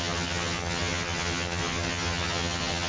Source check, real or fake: fake